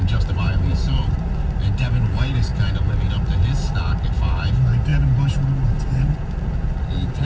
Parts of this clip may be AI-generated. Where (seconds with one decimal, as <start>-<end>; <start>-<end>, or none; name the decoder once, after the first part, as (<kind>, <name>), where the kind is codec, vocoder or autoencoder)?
4.9-5.8 (vocoder, BigVGAN v2)